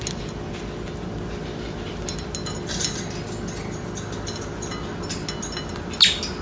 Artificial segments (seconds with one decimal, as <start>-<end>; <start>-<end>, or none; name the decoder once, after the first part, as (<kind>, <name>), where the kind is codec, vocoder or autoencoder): none